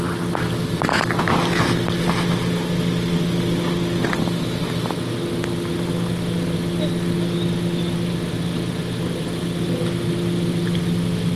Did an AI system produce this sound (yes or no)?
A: no